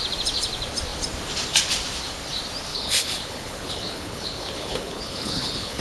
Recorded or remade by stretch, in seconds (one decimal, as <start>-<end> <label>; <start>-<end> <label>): 0.0-2.7 recorded; 2.7-5.8 remade